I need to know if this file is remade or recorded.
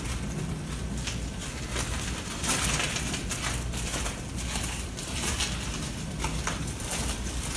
recorded